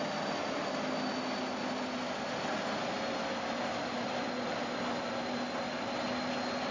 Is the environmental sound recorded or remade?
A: recorded